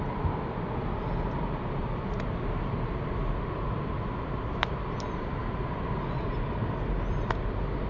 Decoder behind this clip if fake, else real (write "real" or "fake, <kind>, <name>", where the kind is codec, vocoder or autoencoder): real